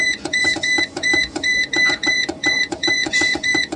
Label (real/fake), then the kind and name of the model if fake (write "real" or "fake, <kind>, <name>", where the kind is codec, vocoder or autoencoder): fake, vocoder, Vocos